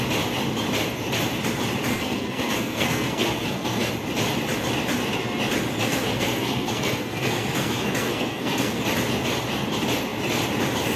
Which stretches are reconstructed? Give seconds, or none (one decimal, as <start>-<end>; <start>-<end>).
1.9-3.9; 5.8-8.8